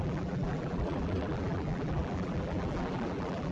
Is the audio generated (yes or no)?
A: yes